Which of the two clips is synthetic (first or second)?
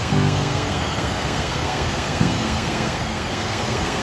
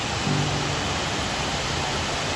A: first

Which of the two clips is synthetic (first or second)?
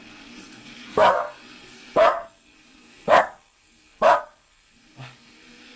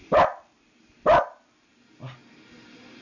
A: first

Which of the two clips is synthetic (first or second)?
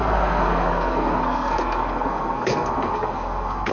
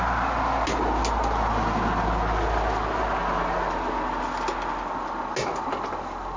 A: first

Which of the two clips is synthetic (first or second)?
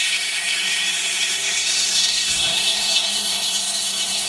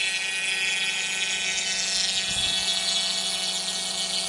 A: first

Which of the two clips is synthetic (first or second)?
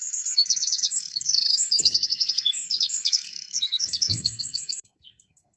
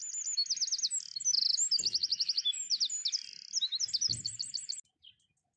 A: first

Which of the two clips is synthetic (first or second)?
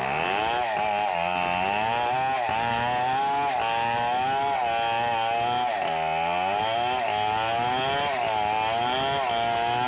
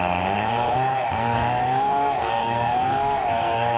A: second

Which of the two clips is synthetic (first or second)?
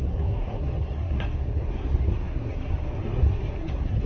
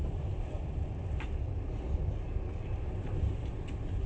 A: first